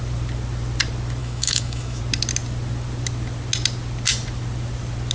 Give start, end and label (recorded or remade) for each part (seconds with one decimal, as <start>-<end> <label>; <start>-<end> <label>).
0.0-1.2 recorded; 1.2-2.0 remade; 2.0-5.1 recorded